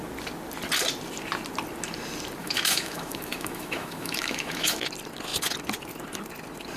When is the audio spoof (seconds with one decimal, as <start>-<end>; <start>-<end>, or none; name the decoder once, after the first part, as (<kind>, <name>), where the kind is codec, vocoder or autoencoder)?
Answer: 2.4-4.8 (autoencoder, DAC-VAE)